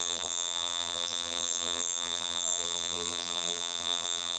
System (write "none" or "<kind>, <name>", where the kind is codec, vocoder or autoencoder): vocoder, BigVGAN v2